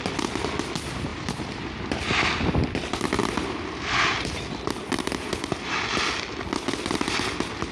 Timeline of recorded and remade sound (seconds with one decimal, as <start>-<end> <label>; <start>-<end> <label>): 0.0-1.1 recorded; 1.1-5.7 remade; 5.7-7.7 recorded